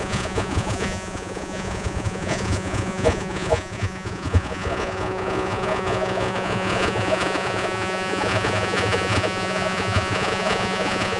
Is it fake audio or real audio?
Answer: fake